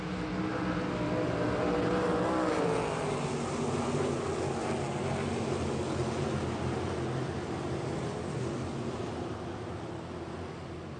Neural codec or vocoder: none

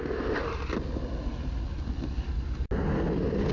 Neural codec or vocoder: none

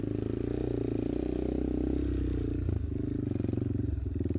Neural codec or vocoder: none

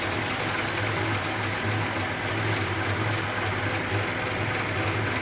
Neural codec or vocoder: none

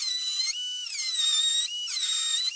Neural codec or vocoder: none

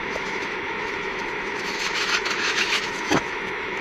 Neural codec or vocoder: autoencoder, DAC-VAE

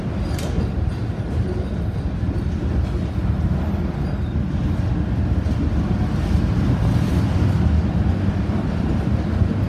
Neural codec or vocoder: none